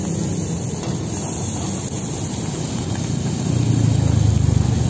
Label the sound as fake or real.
real